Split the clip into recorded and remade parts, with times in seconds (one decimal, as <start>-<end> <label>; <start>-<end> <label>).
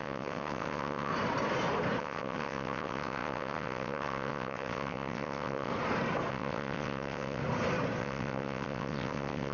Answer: 0.0-1.1 remade; 1.1-2.0 recorded; 2.0-5.7 remade; 5.7-6.3 recorded; 6.3-7.4 remade; 7.4-8.0 recorded; 8.0-9.5 remade